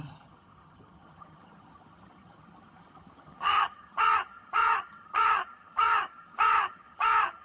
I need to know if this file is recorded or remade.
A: remade